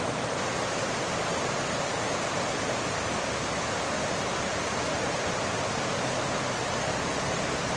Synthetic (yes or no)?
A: no